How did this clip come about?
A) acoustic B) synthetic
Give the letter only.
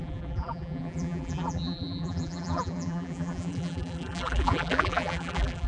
B